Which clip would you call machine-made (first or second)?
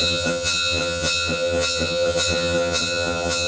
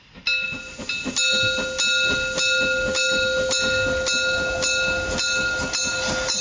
first